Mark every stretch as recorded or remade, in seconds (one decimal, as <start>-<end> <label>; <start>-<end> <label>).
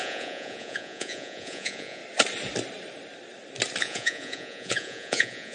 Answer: 0.0-2.0 remade; 2.0-3.8 recorded; 3.8-5.5 remade